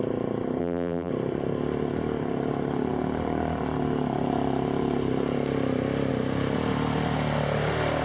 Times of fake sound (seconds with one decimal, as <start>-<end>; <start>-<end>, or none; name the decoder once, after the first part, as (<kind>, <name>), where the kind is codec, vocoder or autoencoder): 0.6-1.1 (vocoder, BigVGAN v2)